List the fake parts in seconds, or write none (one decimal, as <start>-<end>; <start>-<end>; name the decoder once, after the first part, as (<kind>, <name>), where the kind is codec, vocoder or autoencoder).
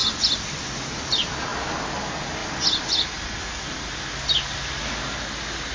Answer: none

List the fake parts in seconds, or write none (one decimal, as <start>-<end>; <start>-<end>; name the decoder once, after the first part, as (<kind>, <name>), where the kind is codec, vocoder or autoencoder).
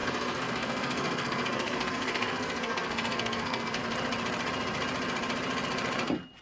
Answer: 0.0-3.8 (codec, SNAC)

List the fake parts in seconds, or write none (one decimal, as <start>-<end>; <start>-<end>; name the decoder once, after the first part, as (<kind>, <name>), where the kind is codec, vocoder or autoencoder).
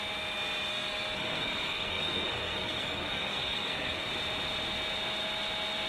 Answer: 0.7-4.1 (codec, SNAC)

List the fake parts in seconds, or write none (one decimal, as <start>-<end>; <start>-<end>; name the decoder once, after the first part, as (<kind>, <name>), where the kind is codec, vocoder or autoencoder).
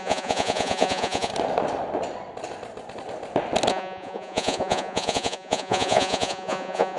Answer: 0.0-1.3 (vocoder, Vocos); 3.7-7.0